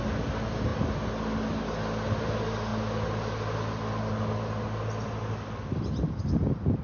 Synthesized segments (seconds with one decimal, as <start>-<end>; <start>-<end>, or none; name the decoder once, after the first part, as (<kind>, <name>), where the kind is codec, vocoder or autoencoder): none